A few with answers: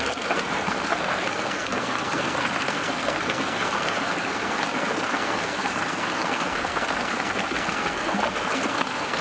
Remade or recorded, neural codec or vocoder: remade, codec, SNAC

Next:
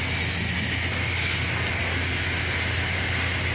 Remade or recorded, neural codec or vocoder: recorded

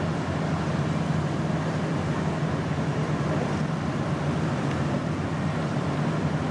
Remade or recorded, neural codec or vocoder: recorded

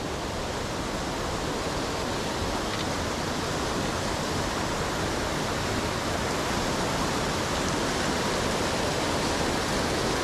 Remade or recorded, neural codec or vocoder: recorded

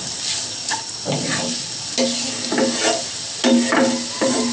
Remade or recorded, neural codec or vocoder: recorded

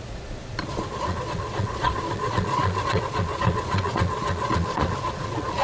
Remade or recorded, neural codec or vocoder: remade, vocoder, Vocos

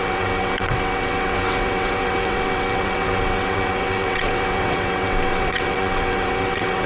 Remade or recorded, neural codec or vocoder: remade, vocoder, WaveNeXt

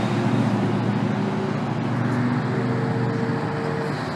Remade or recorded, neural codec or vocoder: recorded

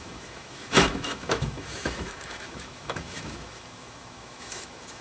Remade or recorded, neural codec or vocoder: remade, autoencoder, DAC-VAE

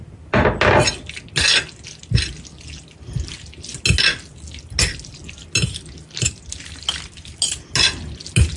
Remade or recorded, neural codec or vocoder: recorded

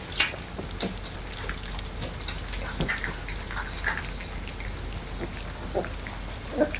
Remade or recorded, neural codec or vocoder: recorded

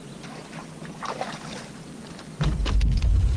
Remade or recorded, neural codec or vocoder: recorded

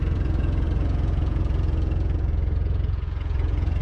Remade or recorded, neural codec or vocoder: remade, vocoder, Vocos